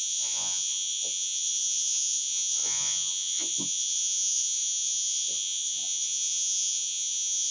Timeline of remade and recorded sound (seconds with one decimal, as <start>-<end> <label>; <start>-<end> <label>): 0.0-7.5 remade